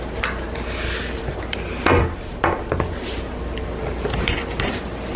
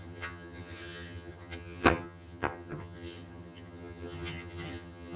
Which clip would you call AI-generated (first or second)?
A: second